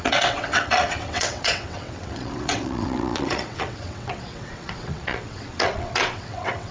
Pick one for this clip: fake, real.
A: fake